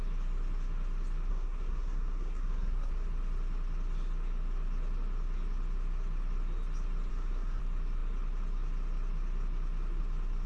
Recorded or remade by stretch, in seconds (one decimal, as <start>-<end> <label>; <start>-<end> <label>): 0.0-1.3 recorded; 1.3-2.9 remade; 2.9-7.1 recorded; 7.1-7.6 remade; 7.6-10.5 recorded